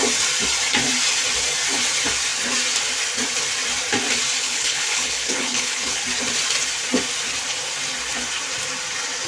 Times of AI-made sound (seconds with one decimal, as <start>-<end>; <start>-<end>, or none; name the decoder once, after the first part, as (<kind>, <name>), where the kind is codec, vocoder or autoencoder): 4.4-6.0 (codec, HILCodec)